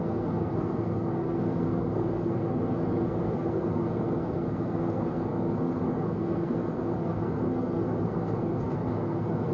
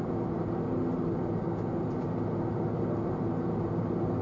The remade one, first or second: first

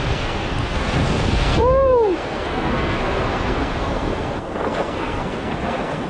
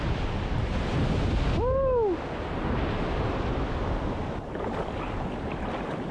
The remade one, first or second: first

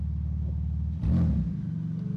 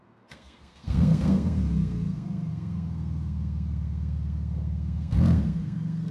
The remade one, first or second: second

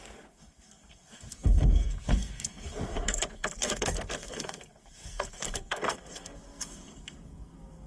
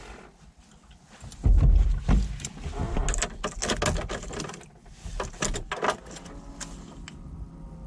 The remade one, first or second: first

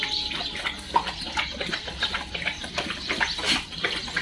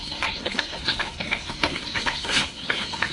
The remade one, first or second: second